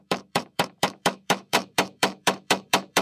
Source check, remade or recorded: remade